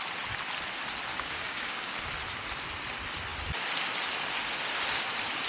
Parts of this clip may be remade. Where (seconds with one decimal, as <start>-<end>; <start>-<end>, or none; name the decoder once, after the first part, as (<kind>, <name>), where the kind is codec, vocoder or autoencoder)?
1.1-2.0 (codec, DAC)